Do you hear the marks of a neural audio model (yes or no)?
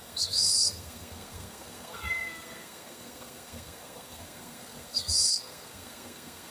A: yes